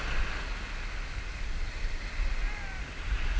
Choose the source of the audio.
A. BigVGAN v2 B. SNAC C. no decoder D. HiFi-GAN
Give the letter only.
A